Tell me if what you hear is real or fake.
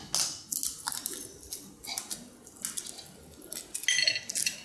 real